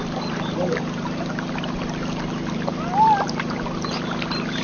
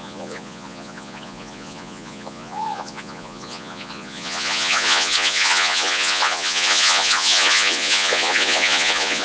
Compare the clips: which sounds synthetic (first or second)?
second